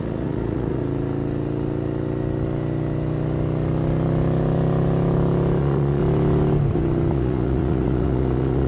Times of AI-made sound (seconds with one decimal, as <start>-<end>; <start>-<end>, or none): 0.0-0.8; 5.6-6.0; 7.1-8.7